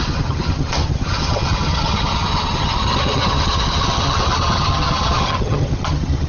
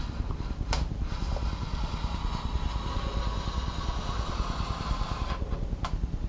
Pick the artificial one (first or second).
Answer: first